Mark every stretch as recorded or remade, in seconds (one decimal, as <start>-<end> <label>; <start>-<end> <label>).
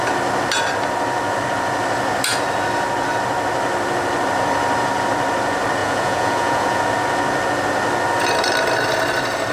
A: 0.0-5.8 recorded; 5.8-6.8 remade; 6.8-9.5 recorded